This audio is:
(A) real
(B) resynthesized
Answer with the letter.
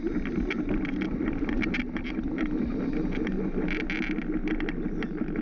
A